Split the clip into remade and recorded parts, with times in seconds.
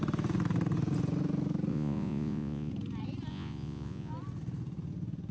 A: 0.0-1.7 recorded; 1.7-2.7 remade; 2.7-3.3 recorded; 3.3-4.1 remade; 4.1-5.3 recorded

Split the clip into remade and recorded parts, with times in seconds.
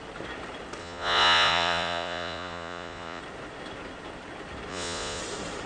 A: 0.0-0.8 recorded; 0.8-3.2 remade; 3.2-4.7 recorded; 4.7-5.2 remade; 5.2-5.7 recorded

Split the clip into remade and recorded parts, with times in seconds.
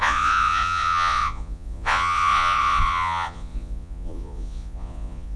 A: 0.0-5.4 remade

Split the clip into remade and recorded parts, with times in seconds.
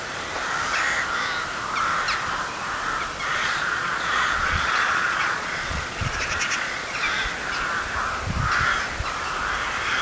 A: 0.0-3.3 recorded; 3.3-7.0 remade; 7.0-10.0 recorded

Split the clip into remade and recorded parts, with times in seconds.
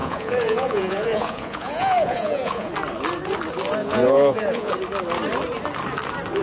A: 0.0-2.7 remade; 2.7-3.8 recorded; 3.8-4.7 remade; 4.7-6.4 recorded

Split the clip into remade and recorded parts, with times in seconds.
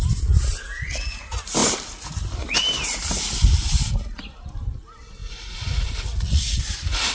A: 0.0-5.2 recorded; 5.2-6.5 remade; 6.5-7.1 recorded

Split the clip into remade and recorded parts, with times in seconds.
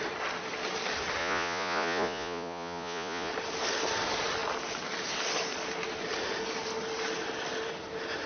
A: 0.0-1.2 recorded; 1.2-3.3 remade; 3.3-8.3 recorded